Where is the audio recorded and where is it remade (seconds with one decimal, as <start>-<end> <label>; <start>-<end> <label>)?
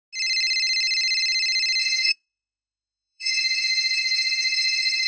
0.0-1.8 recorded; 1.8-5.1 remade